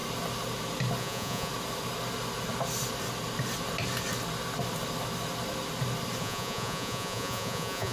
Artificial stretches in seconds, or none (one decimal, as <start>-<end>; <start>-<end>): 1.0-1.5; 6.2-7.9